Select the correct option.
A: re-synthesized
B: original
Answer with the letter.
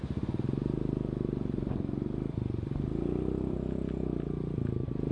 B